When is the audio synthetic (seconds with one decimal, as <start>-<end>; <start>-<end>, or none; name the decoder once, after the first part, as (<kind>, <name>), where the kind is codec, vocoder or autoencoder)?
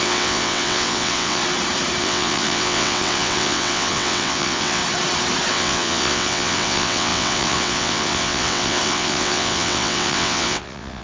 0.0-1.4 (vocoder, WaveNeXt); 2.0-4.8; 5.5-11.0